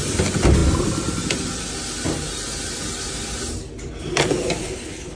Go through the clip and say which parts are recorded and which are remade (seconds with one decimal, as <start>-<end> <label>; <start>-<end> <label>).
0.0-4.6 recorded; 4.6-5.2 remade